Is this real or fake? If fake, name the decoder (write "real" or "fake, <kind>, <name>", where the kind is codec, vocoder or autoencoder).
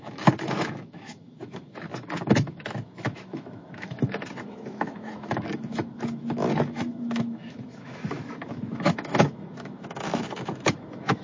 fake, autoencoder, DAC-VAE